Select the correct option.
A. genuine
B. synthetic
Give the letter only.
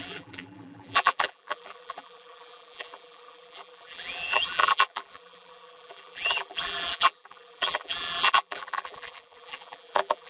B